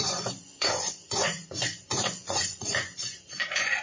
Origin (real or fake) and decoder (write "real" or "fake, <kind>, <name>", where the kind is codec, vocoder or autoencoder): fake, vocoder, Vocos